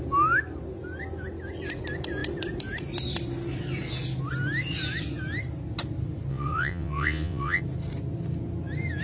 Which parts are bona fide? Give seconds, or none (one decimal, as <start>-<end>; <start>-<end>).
0.0-6.3; 7.6-9.0